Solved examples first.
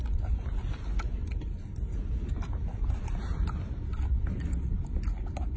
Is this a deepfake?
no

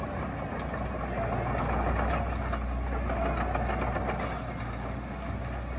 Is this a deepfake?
no